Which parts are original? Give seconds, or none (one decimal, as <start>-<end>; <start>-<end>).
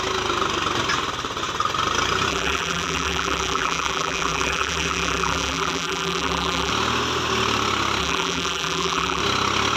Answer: 0.0-2.3; 6.7-8.0; 9.2-9.8